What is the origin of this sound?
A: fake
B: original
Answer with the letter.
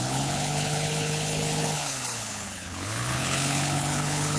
A